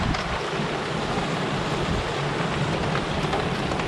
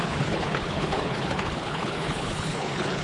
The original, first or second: first